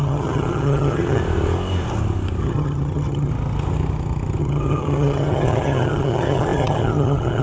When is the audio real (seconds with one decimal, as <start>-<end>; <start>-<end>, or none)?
1.2-2.4; 3.3-4.4